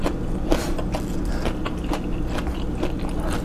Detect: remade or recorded recorded